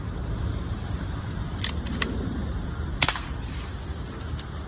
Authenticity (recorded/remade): recorded